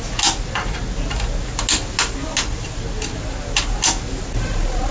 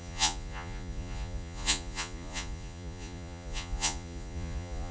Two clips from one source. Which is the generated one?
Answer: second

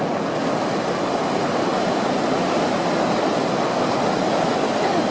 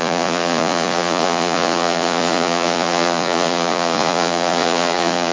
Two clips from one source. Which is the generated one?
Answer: second